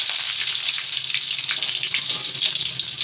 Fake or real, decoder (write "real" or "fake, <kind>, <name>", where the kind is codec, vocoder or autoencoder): real